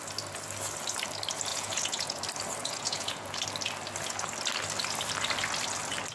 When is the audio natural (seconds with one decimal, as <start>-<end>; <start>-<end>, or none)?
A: 0.0-1.5; 2.2-2.6; 3.3-6.1